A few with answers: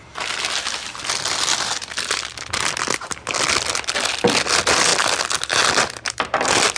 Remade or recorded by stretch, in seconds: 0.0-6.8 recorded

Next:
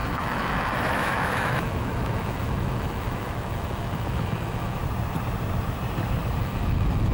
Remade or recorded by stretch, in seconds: 0.0-4.8 remade; 4.8-6.4 recorded; 6.4-7.1 remade

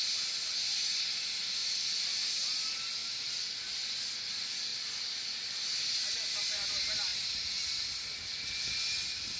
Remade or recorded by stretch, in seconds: 0.0-1.6 recorded; 1.6-2.6 remade; 2.6-3.0 recorded; 3.0-3.6 remade; 3.6-7.1 recorded; 7.1-8.5 remade; 8.5-9.4 recorded

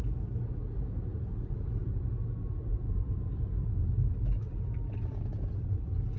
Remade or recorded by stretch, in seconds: 0.0-6.2 recorded

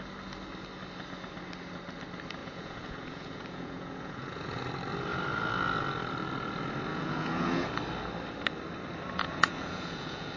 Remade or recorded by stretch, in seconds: 0.0-2.4 recorded; 2.4-4.6 remade; 4.6-6.9 recorded; 6.9-7.7 remade; 7.7-9.2 recorded; 9.2-10.4 remade

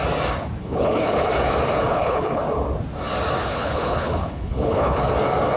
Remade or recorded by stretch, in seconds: 0.0-0.6 recorded; 0.6-1.3 remade; 1.3-1.9 recorded; 1.9-2.4 remade; 2.4-3.4 recorded; 3.4-5.0 remade; 5.0-5.6 recorded

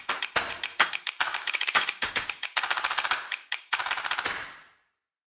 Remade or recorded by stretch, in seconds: 0.0-0.7 recorded; 0.7-3.9 remade; 3.9-5.3 recorded

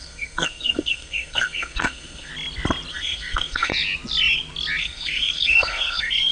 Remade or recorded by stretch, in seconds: 0.0-2.3 remade; 2.3-2.9 recorded; 2.9-3.7 remade; 3.7-4.8 recorded; 4.8-6.3 remade